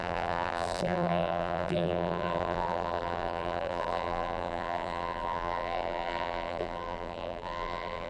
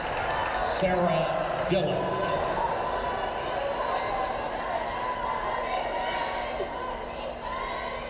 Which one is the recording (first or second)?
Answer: second